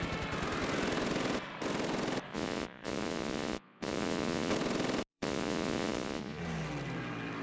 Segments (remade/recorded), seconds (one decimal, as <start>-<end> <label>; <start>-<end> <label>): 0.0-2.3 recorded; 2.3-4.5 remade; 4.5-5.1 recorded; 5.1-6.4 remade; 6.4-7.4 recorded